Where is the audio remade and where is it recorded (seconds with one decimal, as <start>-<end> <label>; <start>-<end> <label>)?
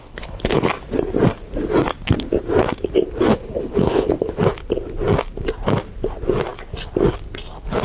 0.0-0.7 remade; 0.7-3.3 recorded; 3.3-4.4 remade; 4.4-7.8 recorded